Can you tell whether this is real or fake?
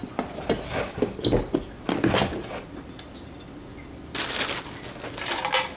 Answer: real